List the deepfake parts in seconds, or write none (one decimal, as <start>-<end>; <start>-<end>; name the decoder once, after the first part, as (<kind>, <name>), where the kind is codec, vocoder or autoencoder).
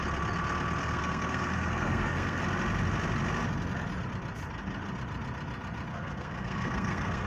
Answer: 0.8-2.4 (codec, SNAC); 5.9-7.3